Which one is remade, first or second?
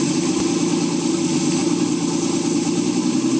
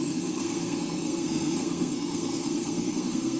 second